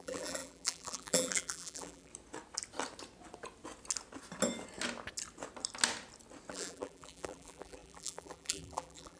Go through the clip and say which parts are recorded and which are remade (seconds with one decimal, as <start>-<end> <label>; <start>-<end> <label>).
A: 0.0-2.1 remade; 2.1-6.5 recorded; 6.5-9.2 remade